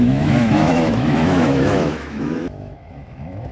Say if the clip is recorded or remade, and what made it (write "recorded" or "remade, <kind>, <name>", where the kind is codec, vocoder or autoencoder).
remade, autoencoder, DAC-VAE